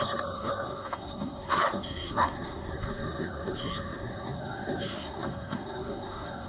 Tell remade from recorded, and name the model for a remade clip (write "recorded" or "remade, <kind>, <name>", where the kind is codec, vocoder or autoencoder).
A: remade, codec, SNAC